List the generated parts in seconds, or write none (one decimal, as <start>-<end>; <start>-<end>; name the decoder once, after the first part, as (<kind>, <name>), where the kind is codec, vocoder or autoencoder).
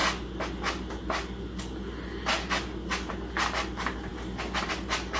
none